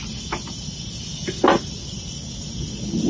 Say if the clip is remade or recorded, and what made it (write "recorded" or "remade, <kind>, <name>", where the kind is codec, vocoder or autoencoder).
recorded